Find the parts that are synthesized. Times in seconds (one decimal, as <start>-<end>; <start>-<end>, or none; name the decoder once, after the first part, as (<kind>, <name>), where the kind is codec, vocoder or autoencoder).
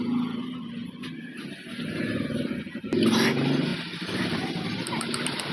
3.7-5.5 (vocoder, BigVGAN v2)